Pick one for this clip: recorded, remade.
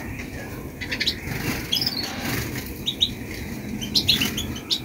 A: recorded